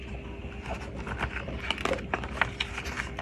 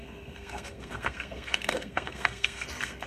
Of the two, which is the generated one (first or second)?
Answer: second